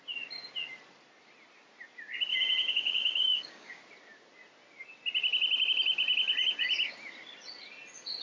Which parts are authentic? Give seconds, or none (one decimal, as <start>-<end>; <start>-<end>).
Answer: 0.0-2.3; 3.8-8.2